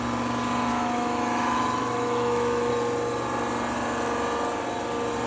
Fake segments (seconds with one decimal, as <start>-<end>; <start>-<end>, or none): 0.7-2.7